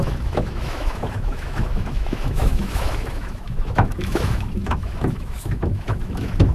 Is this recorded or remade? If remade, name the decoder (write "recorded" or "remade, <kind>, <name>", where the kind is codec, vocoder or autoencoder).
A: remade, autoencoder, DAC-VAE